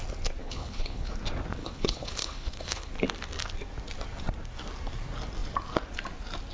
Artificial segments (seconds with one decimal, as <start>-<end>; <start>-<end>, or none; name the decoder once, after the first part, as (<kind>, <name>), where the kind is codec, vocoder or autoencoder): 0.4-1.1 (codec, HILCodec); 1.6-2.9